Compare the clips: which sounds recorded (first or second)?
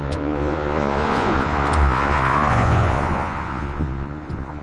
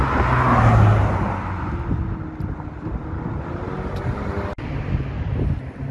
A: second